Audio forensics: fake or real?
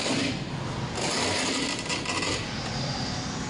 real